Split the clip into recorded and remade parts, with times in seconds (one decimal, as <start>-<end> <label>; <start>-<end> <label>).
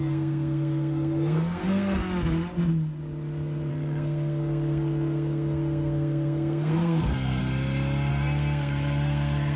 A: 0.0-2.0 remade; 2.0-3.7 recorded; 3.7-7.4 remade; 7.4-8.1 recorded; 8.1-9.6 remade